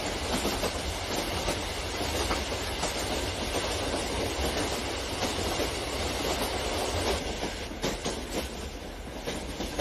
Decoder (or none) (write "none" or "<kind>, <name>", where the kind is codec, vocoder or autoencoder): none